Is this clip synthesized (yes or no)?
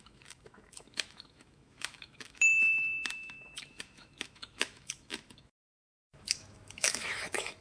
yes